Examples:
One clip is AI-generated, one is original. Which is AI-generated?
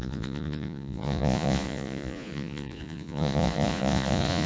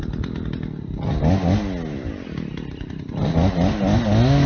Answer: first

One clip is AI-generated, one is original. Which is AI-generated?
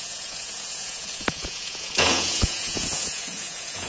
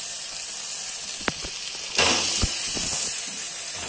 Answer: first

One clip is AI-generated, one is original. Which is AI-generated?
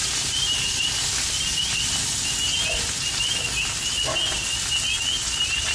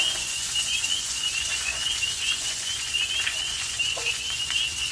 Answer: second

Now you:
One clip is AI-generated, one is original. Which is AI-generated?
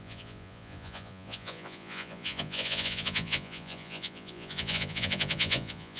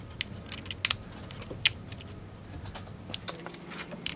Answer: first